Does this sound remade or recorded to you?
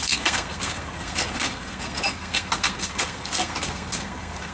remade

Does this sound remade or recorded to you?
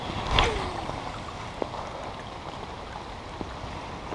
recorded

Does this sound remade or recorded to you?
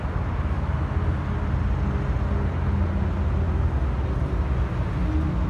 recorded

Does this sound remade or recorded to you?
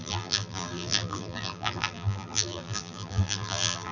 remade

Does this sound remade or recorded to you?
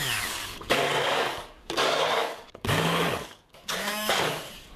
remade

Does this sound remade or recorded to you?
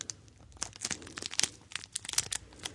recorded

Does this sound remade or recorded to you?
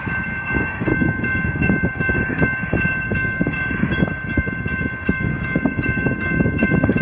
remade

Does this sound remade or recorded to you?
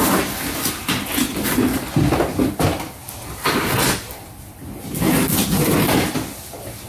recorded